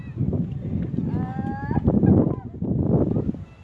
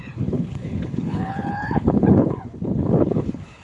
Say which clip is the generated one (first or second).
second